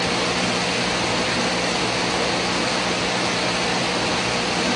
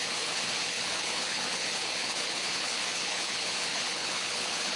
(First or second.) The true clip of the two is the first